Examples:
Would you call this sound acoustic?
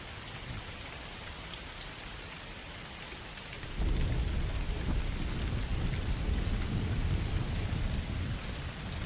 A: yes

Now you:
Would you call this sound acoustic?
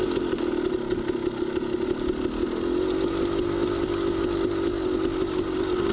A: yes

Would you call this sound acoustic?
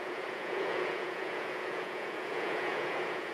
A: no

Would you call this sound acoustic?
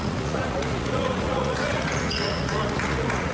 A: no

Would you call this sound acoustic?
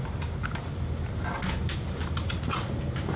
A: yes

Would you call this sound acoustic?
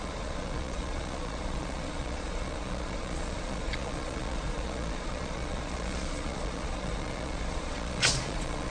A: no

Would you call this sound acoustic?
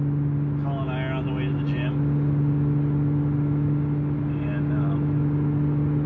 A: yes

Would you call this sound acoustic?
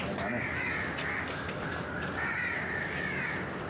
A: yes